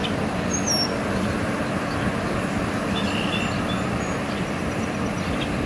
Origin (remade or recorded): recorded